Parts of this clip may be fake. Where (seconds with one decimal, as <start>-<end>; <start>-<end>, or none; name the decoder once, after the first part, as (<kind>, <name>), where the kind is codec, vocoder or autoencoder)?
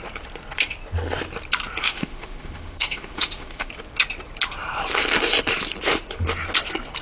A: 1.8-3.7 (autoencoder, DAC-VAE)